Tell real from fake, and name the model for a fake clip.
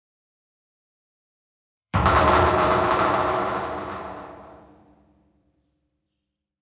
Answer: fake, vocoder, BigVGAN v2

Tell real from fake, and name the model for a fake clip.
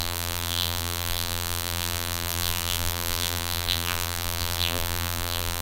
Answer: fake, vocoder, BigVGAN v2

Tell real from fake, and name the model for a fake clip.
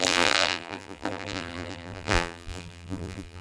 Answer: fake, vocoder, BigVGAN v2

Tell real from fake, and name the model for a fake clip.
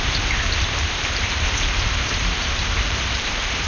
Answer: fake, vocoder, BigVGAN v2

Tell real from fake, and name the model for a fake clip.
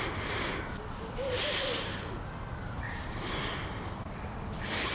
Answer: real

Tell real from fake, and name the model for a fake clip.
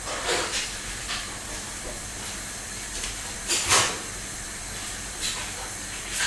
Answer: fake, vocoder, BigVGAN v2